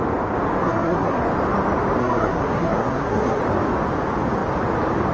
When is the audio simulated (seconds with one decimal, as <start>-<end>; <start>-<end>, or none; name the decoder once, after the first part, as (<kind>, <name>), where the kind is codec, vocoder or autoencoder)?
0.6-1.2 (codec, SNAC); 2.0-3.4